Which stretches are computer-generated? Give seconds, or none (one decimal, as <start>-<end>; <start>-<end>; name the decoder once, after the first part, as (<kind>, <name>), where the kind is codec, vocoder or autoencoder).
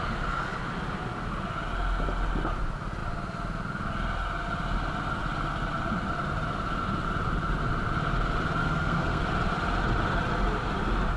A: 8.6-9.2 (codec, SNAC)